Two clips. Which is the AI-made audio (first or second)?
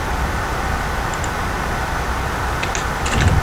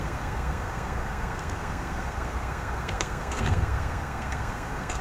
second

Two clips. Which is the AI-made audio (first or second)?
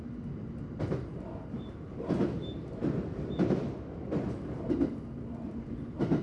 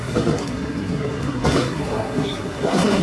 second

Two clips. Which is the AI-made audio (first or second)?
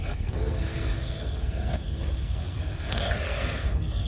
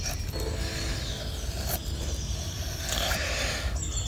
first